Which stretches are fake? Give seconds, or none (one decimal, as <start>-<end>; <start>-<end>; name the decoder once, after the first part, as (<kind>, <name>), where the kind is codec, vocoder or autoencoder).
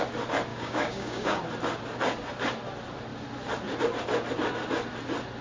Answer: 0.5-1.4 (codec, DAC)